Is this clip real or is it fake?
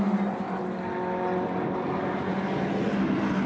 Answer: real